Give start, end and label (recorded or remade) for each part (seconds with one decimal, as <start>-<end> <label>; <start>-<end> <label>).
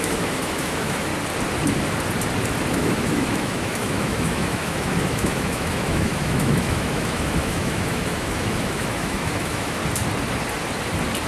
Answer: 0.0-1.1 remade; 1.1-2.7 recorded; 2.7-9.8 remade; 9.8-11.3 recorded